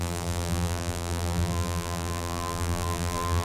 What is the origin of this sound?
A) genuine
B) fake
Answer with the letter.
B